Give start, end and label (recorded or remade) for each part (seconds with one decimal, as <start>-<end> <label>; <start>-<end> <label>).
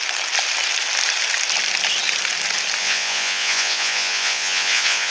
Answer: 0.0-2.8 recorded; 2.8-5.1 remade